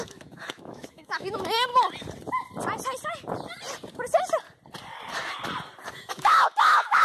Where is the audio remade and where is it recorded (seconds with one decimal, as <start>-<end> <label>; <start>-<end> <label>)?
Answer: 0.0-1.7 remade; 1.7-5.9 recorded; 5.9-7.0 remade